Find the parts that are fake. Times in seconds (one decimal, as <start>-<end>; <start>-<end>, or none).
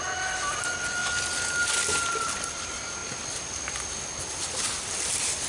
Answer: none